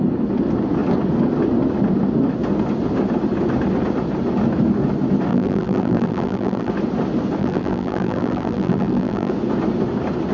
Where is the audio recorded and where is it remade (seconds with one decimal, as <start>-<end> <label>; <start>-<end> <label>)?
0.0-5.3 recorded; 5.3-6.7 remade; 6.7-7.4 recorded; 7.4-9.3 remade; 9.3-10.3 recorded